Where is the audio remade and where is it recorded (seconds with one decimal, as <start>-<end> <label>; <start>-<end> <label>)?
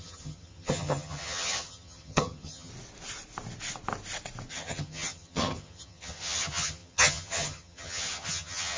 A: 0.0-2.7 remade; 2.7-4.5 recorded; 4.5-8.8 remade